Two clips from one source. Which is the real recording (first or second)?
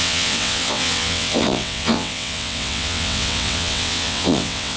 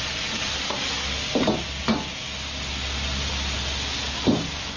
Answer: second